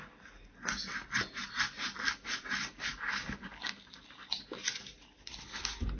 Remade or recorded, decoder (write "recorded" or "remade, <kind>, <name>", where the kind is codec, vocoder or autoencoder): recorded